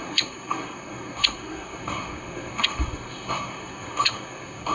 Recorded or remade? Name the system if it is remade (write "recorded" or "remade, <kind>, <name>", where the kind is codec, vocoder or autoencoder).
remade, codec, SNAC